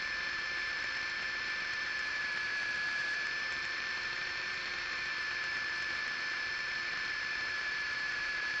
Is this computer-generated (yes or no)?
yes